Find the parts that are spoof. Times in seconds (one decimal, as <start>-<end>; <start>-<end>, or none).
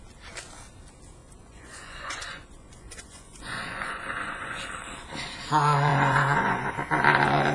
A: 1.2-4.6; 5.9-6.7